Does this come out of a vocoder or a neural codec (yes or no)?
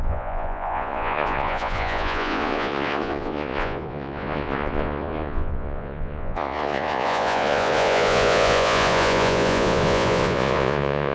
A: yes